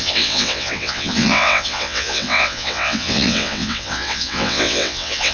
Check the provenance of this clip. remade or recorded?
remade